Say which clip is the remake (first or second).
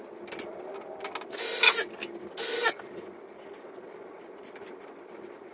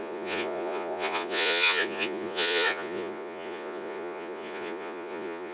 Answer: second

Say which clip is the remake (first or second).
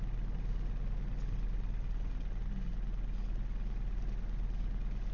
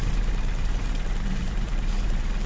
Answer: second